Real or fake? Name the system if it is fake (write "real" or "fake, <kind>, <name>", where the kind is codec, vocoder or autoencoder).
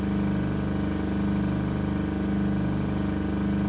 real